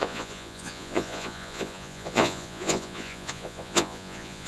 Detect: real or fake fake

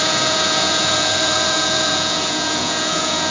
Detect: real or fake fake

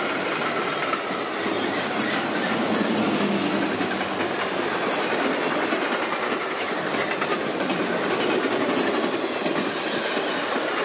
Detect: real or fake real